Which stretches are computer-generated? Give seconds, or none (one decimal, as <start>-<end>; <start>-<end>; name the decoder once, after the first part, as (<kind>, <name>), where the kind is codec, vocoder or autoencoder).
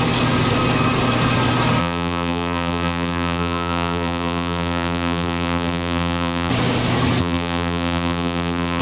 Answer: 1.8-6.5 (vocoder, BigVGAN v2); 7.2-8.8